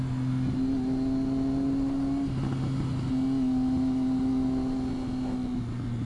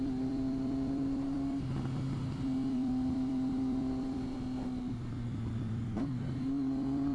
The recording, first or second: first